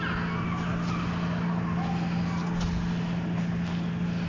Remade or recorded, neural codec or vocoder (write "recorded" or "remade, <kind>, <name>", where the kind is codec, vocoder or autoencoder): recorded